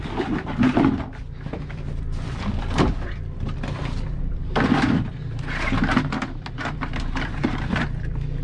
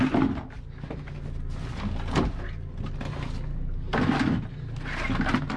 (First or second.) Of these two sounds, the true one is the second